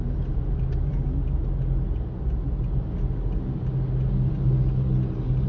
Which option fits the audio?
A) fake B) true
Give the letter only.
B